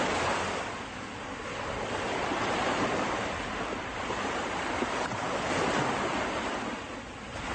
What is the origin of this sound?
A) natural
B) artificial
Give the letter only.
A